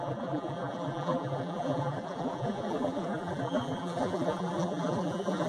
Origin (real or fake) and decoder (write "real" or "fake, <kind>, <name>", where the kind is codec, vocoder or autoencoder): fake, vocoder, BigVGAN v2